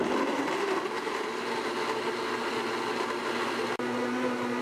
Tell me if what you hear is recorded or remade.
recorded